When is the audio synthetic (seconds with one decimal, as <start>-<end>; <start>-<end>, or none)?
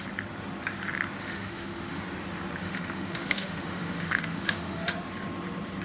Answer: 1.2-2.0; 2.6-4.9